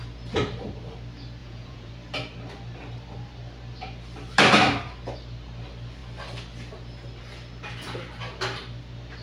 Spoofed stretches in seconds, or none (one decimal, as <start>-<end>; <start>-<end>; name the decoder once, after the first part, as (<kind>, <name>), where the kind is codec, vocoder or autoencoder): 1.4-1.9 (vocoder, Vocos)